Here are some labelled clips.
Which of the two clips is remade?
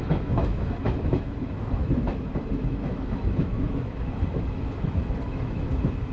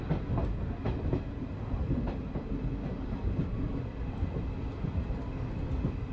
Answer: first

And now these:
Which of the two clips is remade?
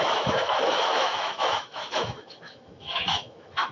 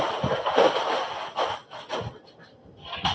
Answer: first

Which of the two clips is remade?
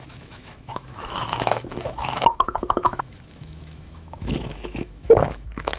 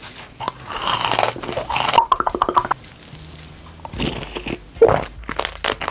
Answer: first